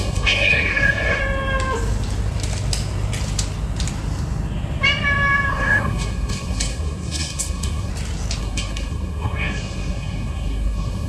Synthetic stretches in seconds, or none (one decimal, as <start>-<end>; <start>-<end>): 0.0-1.2; 5.5-7.9; 8.4-11.1